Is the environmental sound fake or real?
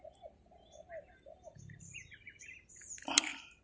real